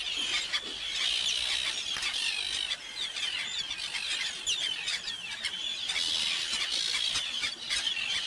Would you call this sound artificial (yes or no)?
no